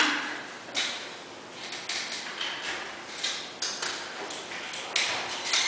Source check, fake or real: real